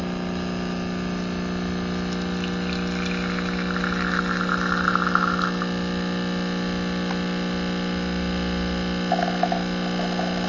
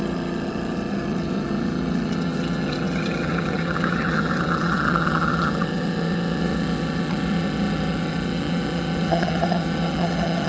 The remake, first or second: second